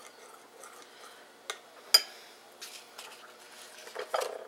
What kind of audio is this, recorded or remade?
recorded